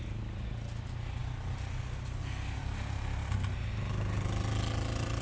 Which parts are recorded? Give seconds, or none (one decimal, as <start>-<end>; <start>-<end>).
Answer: 0.0-5.2